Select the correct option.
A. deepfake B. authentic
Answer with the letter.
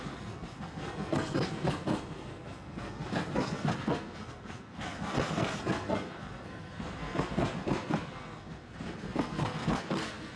A